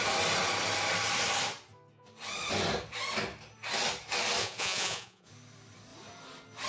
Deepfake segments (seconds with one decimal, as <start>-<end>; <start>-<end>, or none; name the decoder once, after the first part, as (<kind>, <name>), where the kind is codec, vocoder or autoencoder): 4.4-5.3 (vocoder, Vocos)